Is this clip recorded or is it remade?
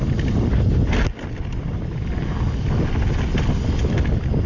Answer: recorded